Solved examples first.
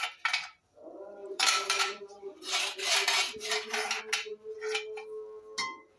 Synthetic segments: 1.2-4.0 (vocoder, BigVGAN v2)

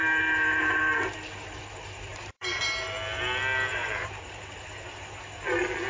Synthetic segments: 0.0-0.8 (vocoder, BigVGAN v2); 2.1-2.6; 3.7-4.6

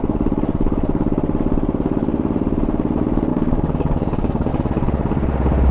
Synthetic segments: 3.3-4.5 (codec, DAC)